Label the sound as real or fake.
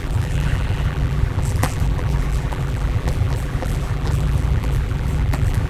fake